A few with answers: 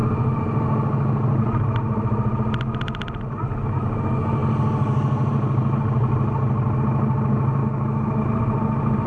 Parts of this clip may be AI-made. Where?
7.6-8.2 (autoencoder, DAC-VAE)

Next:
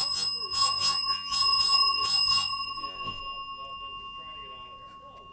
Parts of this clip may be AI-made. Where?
0.0-3.2 (vocoder, Vocos)

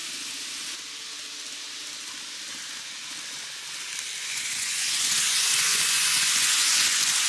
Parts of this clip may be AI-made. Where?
4.2-7.3 (vocoder, Vocos)

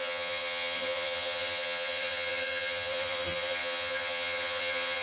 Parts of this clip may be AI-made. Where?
0.0-5.0 (vocoder, HiFi-GAN)